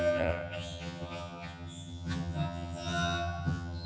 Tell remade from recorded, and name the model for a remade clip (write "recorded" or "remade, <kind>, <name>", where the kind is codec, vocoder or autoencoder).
remade, vocoder, HiFi-GAN